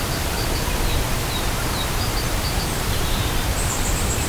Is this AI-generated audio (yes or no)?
yes